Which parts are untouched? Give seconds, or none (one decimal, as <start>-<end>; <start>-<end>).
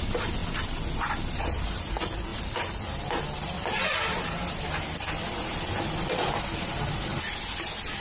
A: 0.0-8.0